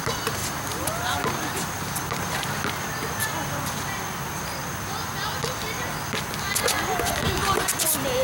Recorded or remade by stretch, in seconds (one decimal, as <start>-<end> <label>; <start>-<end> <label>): 0.0-8.2 recorded